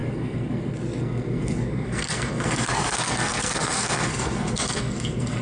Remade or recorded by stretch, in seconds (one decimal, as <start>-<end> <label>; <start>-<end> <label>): 0.0-5.4 remade